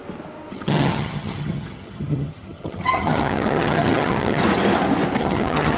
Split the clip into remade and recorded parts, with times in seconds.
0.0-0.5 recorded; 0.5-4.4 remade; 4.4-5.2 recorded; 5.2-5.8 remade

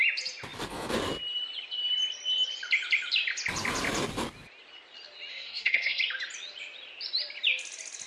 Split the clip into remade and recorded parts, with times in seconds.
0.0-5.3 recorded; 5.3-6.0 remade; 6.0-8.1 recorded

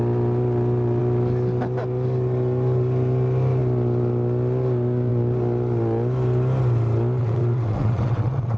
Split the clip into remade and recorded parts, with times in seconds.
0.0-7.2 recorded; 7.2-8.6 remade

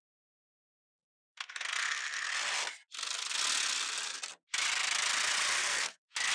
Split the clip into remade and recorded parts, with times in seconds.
0.0-0.9 recorded; 0.9-2.3 remade; 2.3-5.6 recorded; 5.6-6.3 remade